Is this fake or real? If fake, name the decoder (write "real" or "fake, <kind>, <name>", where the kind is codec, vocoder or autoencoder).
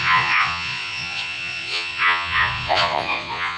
fake, vocoder, Vocos